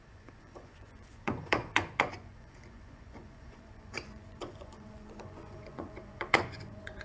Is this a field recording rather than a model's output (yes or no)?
no